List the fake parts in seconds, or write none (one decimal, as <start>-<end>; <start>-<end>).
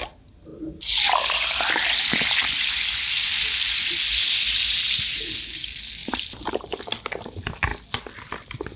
6.0-6.8